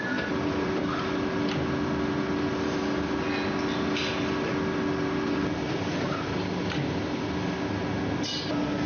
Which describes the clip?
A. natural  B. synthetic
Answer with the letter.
A